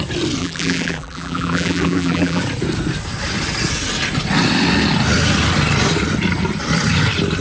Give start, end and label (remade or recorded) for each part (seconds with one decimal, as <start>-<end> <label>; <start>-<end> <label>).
0.0-0.4 recorded; 0.4-2.4 remade; 2.4-7.4 recorded